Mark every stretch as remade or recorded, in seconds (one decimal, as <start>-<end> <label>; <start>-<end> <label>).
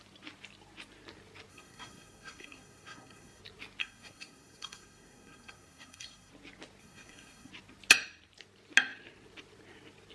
0.0-1.5 recorded; 1.5-3.4 remade; 3.4-3.8 recorded; 3.8-6.3 remade; 6.3-6.8 recorded; 6.8-7.5 remade; 7.5-10.1 recorded